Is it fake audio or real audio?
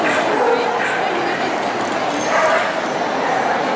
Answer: real